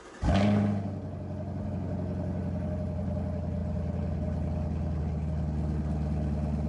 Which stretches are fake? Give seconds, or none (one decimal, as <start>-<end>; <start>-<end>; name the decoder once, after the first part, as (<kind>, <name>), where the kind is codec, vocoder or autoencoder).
none